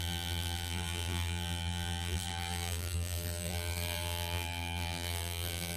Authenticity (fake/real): fake